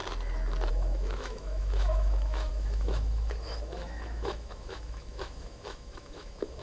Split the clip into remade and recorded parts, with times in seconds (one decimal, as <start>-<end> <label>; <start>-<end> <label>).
0.0-0.7 recorded; 0.7-6.6 remade

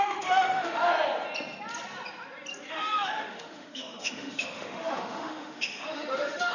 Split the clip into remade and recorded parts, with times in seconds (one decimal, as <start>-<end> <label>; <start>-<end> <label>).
0.0-0.9 remade; 0.9-2.7 recorded; 2.7-6.5 remade

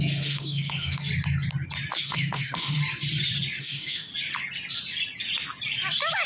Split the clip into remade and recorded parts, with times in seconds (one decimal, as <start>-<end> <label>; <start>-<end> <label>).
0.0-1.0 remade; 1.0-2.0 recorded; 2.0-2.8 remade; 2.8-3.6 recorded; 3.6-4.1 remade; 4.1-6.3 recorded

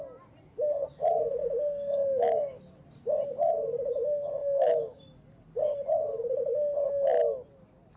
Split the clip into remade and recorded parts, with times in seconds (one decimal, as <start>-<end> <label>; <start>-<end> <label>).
0.0-1.4 recorded; 1.4-2.6 remade; 2.6-4.4 recorded; 4.4-5.0 remade; 5.0-8.0 recorded

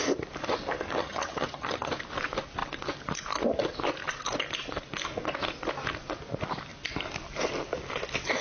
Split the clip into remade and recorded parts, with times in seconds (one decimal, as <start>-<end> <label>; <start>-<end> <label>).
0.0-1.0 recorded; 1.0-1.9 remade; 1.9-8.4 recorded

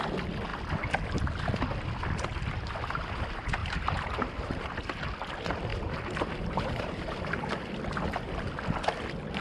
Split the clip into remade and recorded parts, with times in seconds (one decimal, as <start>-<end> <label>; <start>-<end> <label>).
0.0-3.6 recorded; 3.6-4.8 remade; 4.8-5.7 recorded; 5.7-7.5 remade; 7.5-9.4 recorded

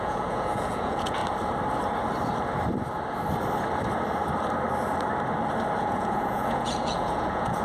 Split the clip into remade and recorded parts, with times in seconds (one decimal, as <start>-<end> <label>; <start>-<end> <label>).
0.0-1.2 remade; 1.2-5.8 recorded; 5.8-7.6 remade